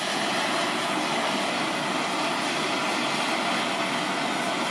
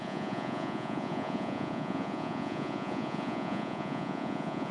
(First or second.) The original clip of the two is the first